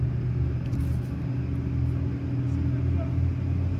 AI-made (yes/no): no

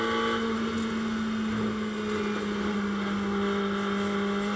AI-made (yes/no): no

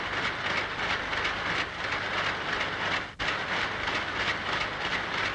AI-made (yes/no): no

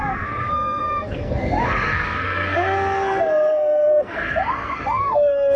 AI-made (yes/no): yes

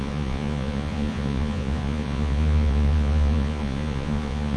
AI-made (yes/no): yes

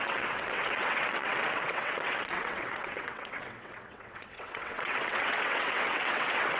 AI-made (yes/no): yes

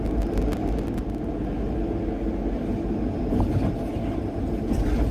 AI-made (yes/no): no